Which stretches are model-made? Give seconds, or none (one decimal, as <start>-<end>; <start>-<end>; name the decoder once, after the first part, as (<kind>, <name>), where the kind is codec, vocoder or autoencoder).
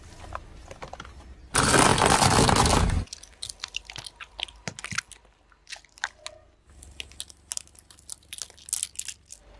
none